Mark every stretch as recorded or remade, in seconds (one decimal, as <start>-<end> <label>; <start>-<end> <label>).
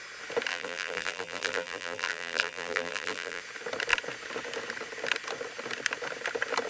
0.0-0.5 recorded; 0.5-3.4 remade; 3.4-6.7 recorded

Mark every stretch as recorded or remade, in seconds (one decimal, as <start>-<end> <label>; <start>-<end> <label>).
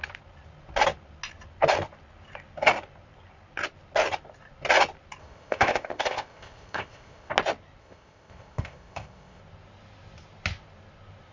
0.0-5.2 recorded; 5.2-7.3 remade; 7.3-7.8 recorded; 7.8-9.4 remade; 9.4-11.3 recorded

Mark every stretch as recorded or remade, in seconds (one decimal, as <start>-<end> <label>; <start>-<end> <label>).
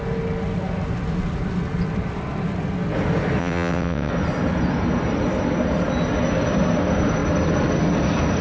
0.0-3.4 recorded; 3.4-4.1 remade; 4.1-8.4 recorded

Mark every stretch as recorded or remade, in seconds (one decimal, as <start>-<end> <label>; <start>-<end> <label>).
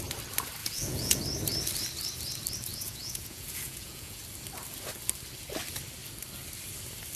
0.0-0.6 recorded; 0.6-1.2 remade; 1.2-2.7 recorded; 2.7-4.2 remade; 4.2-7.2 recorded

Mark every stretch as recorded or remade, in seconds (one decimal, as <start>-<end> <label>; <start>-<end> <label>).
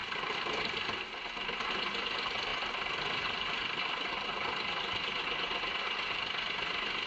0.0-7.1 recorded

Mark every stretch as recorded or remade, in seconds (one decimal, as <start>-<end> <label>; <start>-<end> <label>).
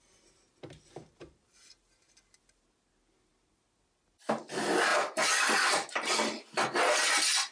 0.0-7.5 recorded